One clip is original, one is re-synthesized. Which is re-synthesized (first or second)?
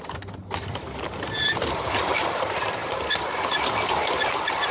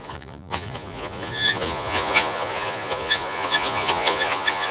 second